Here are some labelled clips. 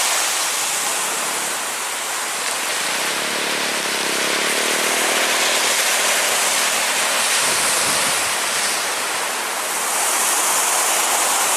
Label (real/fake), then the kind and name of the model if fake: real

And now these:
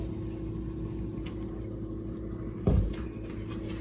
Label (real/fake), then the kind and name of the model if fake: real